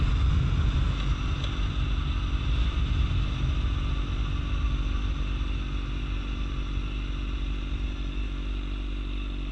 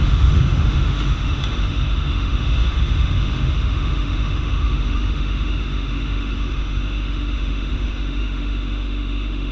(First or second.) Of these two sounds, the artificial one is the second